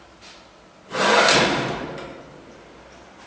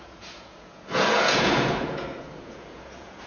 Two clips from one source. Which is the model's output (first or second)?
second